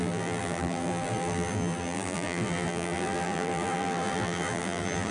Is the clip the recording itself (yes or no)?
no